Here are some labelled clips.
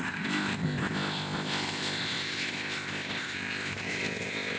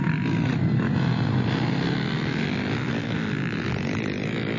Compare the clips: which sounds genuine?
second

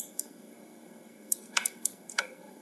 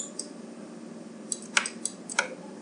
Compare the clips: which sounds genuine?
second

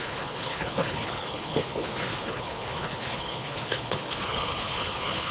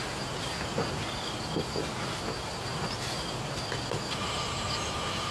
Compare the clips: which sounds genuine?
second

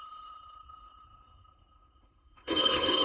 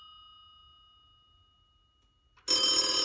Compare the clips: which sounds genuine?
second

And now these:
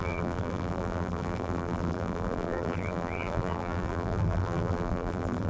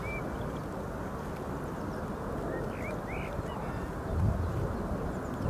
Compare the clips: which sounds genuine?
second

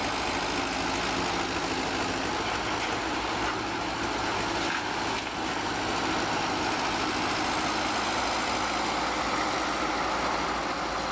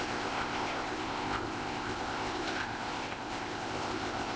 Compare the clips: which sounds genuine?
first